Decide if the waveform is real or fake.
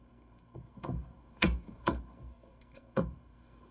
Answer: fake